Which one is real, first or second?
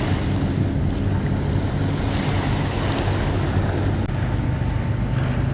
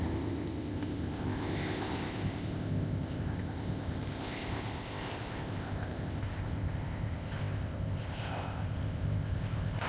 first